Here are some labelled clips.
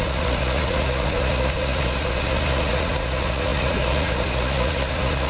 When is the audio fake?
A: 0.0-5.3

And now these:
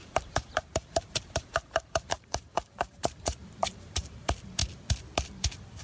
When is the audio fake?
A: 0.0-4.6

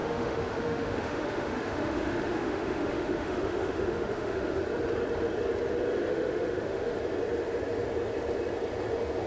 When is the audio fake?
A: 0.0-4.6; 6.1-7.0